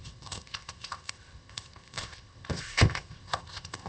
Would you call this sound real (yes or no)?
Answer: no